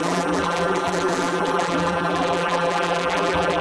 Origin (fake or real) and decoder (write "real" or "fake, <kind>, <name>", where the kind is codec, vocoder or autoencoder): fake, vocoder, BigVGAN v2